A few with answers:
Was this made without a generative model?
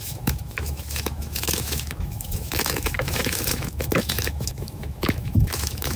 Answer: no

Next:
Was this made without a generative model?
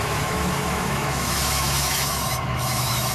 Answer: no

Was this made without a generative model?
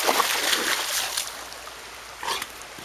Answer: yes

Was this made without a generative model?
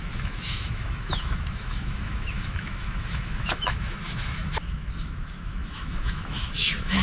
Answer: no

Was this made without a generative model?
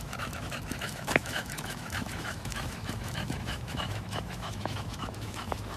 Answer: no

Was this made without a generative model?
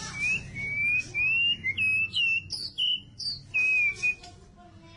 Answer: yes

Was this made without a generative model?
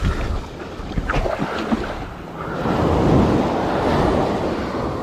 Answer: yes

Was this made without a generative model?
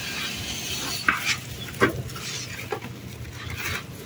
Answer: yes